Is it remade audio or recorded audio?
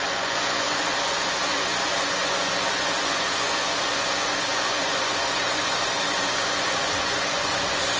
remade